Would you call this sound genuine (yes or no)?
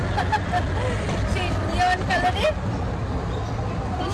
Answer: yes